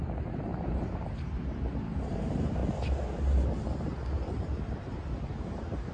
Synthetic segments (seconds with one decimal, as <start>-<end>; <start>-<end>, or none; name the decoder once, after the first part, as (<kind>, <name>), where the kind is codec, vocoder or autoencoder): 0.0-2.6 (vocoder, BigVGAN v2); 5.4-5.9